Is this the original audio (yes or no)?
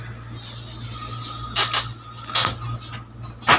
yes